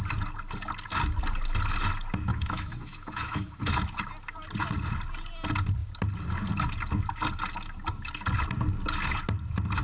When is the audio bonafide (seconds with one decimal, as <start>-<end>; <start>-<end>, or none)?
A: 0.0-2.3; 3.6-9.8

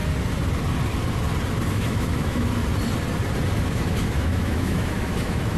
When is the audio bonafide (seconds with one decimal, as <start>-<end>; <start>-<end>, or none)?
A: 0.0-1.7; 2.6-3.6